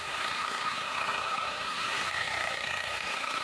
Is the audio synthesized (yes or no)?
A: yes